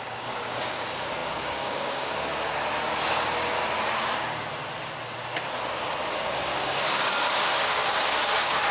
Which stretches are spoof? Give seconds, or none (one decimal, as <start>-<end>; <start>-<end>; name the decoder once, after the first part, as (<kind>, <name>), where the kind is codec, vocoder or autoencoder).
0.0-2.3 (codec, DAC); 6.1-8.7